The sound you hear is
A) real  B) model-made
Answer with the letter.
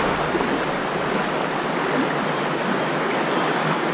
A